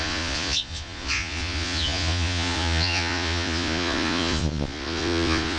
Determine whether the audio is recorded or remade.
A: remade